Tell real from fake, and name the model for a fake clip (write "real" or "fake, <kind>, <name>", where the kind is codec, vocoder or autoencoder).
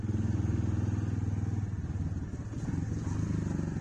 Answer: real